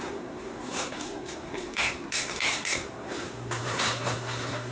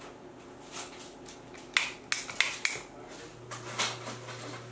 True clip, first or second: second